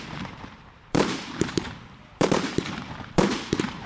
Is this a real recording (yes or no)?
no